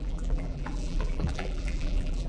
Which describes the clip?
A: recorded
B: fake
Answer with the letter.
B